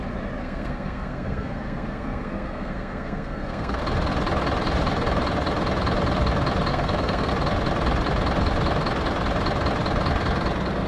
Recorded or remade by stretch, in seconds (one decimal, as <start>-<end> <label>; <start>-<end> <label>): 0.0-0.4 recorded; 0.4-3.8 remade; 3.8-6.7 recorded; 6.7-7.3 remade; 7.3-10.9 recorded